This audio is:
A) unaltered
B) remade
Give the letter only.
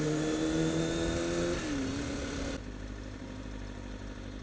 A